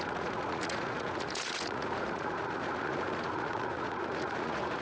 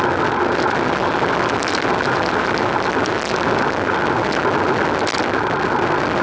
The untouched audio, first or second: second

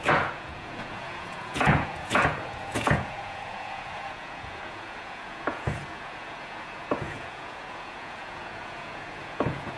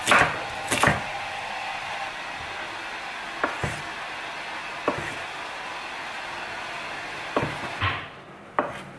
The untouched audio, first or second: second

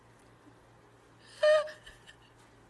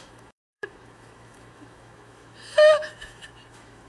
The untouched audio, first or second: first